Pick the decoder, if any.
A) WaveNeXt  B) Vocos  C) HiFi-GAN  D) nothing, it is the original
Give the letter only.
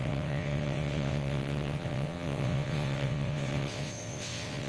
A